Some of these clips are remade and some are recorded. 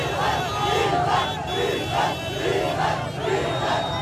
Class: recorded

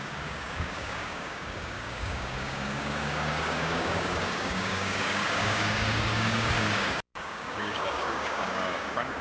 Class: remade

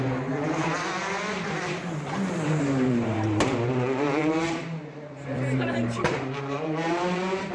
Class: remade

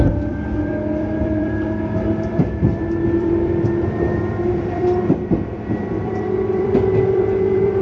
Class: remade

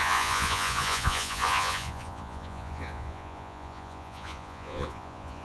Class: remade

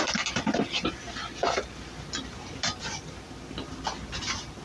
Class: recorded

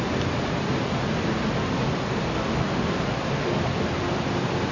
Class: recorded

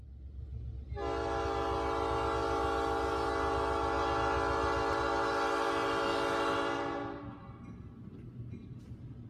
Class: recorded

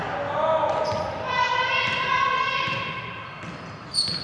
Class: recorded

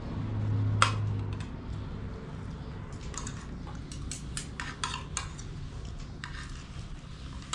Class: recorded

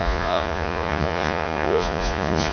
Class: remade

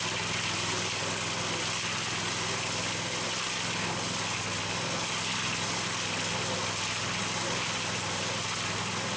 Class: recorded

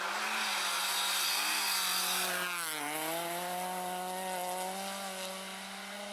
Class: recorded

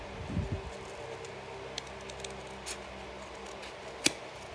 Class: recorded